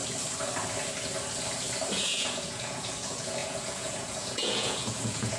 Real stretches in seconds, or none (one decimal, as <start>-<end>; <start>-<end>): 0.0-1.9